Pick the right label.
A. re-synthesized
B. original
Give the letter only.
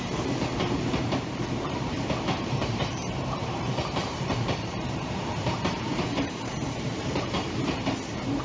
A